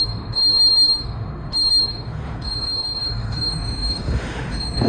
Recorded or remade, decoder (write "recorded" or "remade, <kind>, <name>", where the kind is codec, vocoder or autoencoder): remade, autoencoder, DAC-VAE